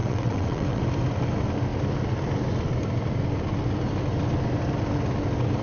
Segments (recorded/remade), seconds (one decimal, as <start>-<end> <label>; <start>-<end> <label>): 0.0-0.8 remade; 0.8-5.6 recorded